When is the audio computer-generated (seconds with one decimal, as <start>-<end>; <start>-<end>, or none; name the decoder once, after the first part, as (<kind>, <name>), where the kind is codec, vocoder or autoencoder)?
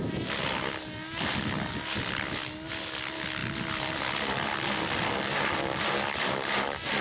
none